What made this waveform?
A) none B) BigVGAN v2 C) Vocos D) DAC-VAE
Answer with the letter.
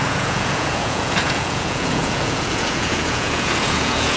C